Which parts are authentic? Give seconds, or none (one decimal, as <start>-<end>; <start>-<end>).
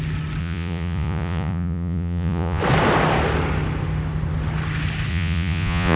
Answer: 0.0-0.4; 2.6-5.1